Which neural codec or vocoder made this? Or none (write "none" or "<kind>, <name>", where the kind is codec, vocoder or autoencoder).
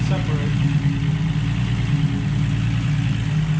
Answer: none